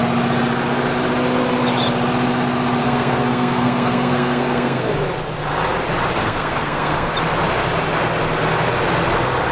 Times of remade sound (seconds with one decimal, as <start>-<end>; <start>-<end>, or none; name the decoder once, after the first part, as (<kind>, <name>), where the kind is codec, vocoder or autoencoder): 2.8-4.9 (codec, SNAC); 6.2-7.1